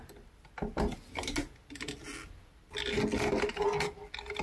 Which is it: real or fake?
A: real